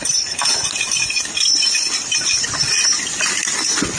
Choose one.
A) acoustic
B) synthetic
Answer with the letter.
A